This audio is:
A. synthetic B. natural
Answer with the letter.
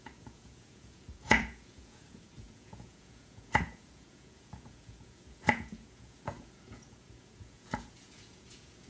A